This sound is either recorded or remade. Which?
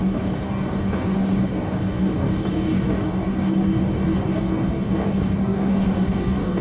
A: remade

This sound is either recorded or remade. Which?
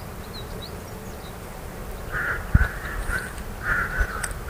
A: recorded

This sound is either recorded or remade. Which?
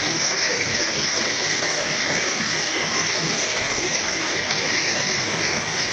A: remade